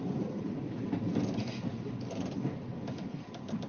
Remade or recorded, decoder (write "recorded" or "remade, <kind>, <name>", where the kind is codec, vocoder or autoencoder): recorded